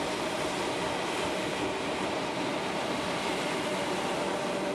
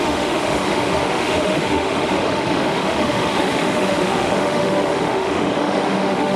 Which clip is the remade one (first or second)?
second